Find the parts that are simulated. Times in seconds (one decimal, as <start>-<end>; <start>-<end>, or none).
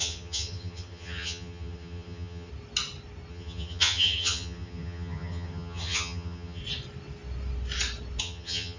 0.0-2.5; 3.3-6.6; 8.2-8.8